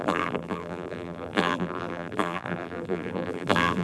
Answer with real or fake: fake